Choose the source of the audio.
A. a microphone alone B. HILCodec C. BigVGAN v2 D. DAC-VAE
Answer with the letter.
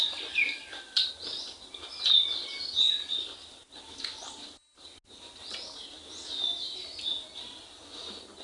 A